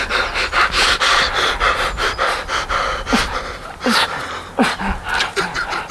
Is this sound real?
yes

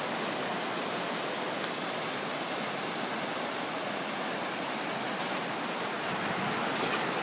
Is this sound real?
yes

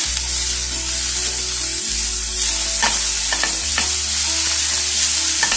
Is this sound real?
yes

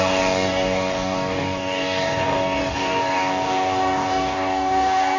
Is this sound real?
no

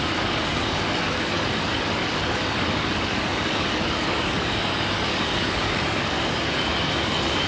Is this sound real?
no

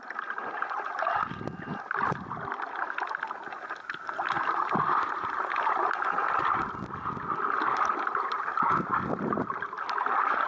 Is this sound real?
yes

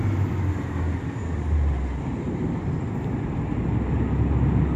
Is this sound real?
yes